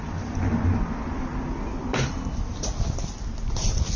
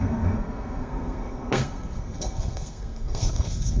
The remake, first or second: second